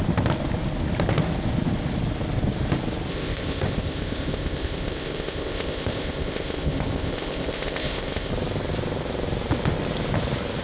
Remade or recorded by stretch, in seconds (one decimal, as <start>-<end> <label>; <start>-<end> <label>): 0.0-3.1 recorded; 3.1-8.3 remade; 8.3-10.6 recorded